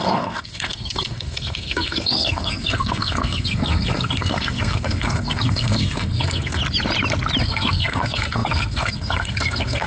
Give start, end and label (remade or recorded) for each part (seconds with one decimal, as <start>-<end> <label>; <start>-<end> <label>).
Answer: 0.0-6.6 remade; 6.6-7.4 recorded; 7.4-9.9 remade